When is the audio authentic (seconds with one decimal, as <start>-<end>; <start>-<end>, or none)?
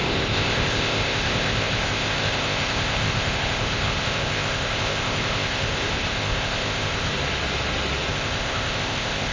7.1-8.1